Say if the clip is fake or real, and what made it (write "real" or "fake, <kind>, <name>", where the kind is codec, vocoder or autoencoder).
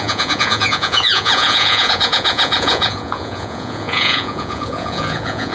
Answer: fake, vocoder, Vocos